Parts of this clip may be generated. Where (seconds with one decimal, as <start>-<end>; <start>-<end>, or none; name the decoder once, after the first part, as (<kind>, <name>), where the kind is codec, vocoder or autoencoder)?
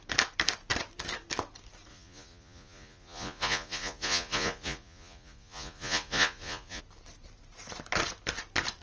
1.9-6.8 (vocoder, Vocos)